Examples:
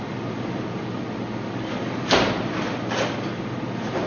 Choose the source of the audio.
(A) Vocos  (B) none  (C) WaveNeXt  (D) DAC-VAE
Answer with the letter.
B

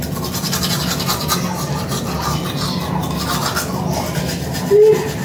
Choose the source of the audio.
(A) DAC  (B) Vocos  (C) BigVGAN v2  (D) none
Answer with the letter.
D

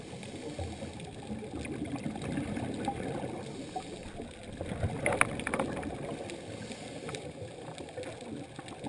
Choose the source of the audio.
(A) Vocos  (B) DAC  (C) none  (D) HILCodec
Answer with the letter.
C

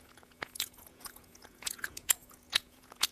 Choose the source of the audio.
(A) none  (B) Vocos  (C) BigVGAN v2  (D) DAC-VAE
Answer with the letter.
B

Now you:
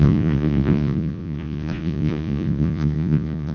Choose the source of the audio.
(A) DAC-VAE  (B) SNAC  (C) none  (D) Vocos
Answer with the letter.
D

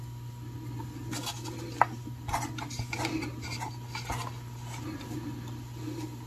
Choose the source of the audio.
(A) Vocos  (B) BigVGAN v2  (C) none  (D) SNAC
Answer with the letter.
C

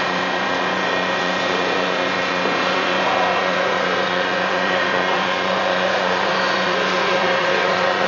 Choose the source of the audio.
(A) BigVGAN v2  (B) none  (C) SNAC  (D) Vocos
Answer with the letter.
D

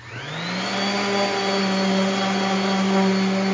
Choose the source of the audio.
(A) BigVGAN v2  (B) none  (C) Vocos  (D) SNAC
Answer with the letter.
B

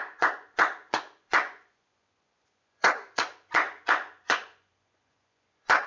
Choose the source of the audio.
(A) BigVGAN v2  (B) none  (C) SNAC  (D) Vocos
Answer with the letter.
D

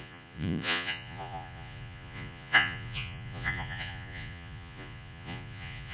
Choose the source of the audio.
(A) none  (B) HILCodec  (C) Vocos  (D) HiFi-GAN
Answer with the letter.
C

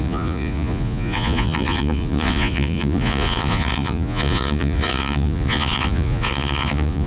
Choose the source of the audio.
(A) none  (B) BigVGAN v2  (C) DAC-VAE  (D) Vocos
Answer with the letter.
D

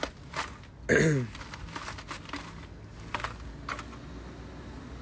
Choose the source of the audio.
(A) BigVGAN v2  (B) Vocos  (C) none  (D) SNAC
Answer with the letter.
C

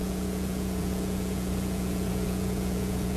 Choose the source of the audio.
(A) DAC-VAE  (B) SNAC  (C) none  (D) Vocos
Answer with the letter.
D